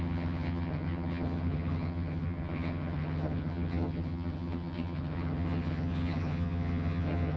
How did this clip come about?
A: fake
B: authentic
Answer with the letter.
A